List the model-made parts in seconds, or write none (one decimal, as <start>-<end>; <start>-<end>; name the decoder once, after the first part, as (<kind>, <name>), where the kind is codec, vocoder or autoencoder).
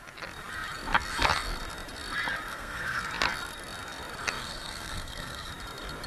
2.5-3.0 (codec, SNAC); 4.4-5.5